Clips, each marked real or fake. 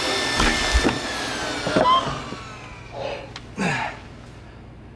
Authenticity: real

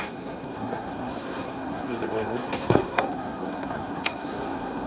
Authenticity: fake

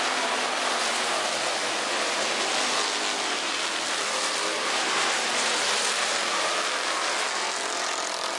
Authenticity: real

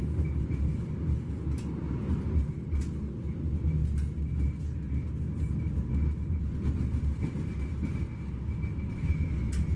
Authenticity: real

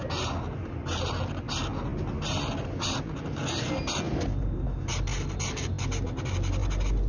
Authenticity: real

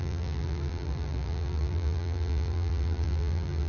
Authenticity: fake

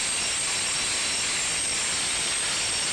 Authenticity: real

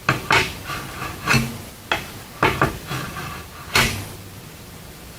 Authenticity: real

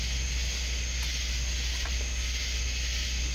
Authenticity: real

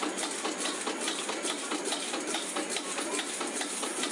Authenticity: real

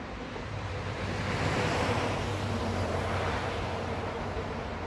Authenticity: fake